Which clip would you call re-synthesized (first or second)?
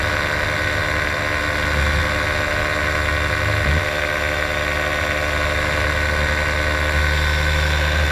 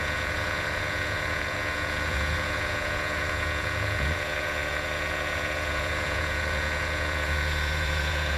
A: second